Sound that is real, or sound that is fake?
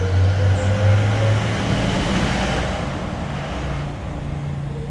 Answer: real